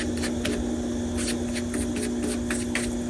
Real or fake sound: real